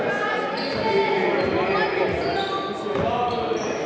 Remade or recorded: recorded